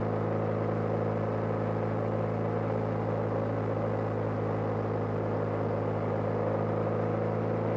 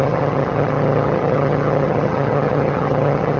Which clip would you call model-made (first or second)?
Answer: second